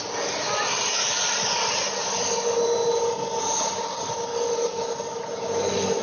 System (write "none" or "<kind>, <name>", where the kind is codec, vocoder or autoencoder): none